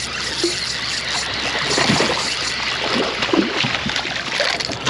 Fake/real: real